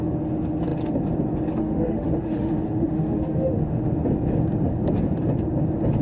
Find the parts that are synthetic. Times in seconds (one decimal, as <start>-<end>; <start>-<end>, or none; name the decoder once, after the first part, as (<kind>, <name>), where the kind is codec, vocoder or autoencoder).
1.6-3.9 (autoencoder, DAC-VAE)